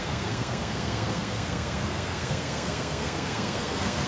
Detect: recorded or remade remade